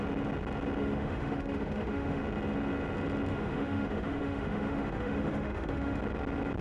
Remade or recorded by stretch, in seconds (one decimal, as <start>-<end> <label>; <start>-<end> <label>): 0.0-0.8 recorded; 0.8-2.2 remade; 2.2-3.3 recorded; 3.3-6.0 remade; 6.0-6.6 recorded